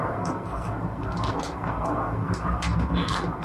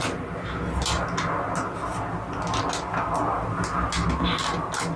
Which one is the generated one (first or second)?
first